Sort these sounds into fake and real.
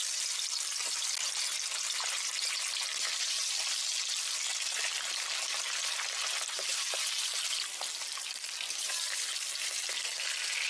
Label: real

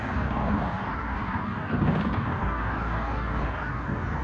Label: fake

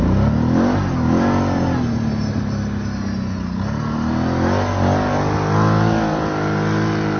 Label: real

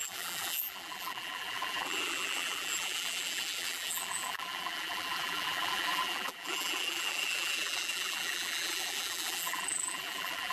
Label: fake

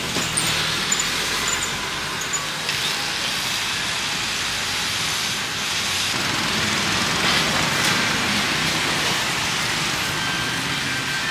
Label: real